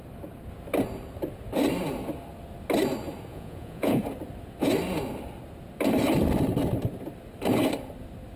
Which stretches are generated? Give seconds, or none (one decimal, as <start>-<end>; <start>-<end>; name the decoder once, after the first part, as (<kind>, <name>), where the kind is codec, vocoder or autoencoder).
3.3-4.0 (vocoder, Vocos)